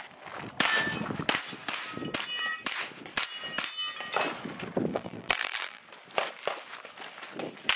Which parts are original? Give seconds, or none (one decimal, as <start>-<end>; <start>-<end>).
0.0-4.9; 5.8-7.8